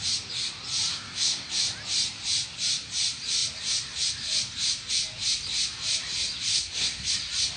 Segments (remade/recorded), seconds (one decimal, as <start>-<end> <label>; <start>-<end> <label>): 0.0-0.9 recorded; 0.9-1.5 remade; 1.5-6.5 recorded; 6.5-7.1 remade; 7.1-7.6 recorded